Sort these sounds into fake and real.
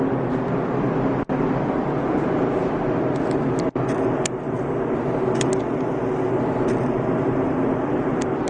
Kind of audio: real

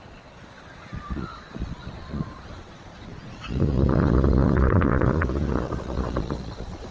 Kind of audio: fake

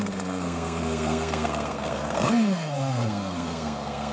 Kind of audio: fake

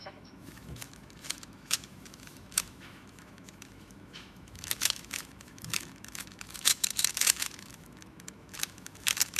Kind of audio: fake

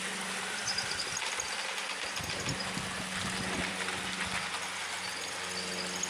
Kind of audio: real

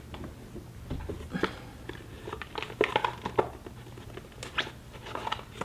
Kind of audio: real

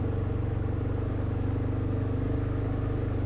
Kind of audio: real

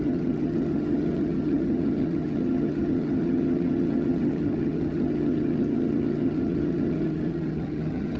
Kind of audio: fake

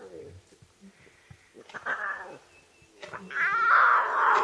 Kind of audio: real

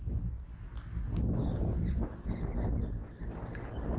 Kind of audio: real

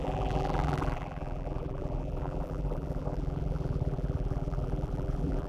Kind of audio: fake